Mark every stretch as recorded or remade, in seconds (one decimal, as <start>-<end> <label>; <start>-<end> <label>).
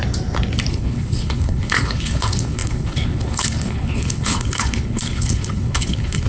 0.0-0.7 recorded; 0.7-6.3 remade